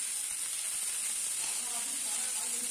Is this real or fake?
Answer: real